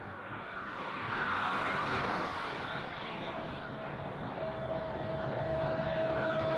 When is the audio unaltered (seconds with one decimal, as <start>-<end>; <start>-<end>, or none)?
none